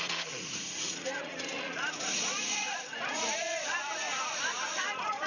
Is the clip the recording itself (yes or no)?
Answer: no